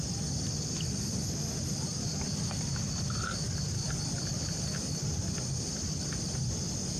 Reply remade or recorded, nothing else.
recorded